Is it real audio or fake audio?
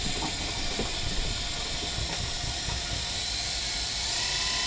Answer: real